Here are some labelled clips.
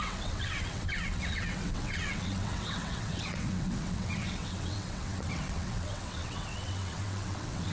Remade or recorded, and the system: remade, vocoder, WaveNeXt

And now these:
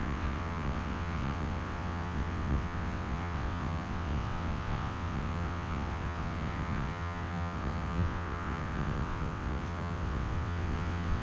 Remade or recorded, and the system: remade, vocoder, WaveNeXt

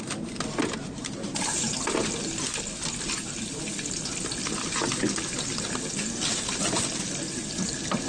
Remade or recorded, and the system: recorded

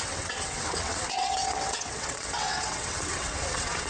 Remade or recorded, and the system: remade, vocoder, WaveNeXt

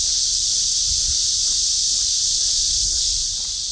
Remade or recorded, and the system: recorded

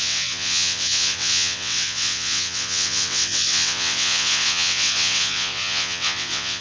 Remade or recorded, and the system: remade, vocoder, WaveNeXt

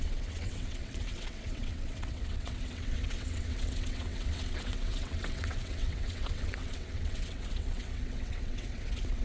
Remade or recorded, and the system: remade, vocoder, WaveNeXt